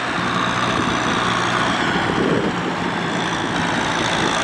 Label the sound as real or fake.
real